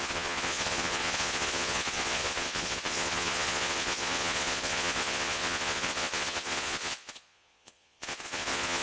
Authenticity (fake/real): fake